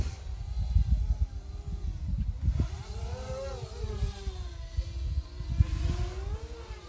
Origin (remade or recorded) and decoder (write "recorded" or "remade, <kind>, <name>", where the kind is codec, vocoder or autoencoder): recorded